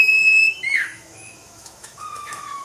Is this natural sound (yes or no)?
no